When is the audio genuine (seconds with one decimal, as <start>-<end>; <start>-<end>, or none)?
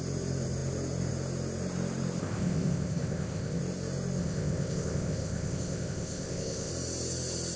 0.0-2.2; 3.6-4.2; 6.7-7.6